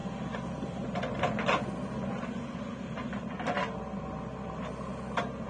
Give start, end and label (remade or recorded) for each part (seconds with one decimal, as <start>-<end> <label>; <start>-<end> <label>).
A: 0.0-5.5 recorded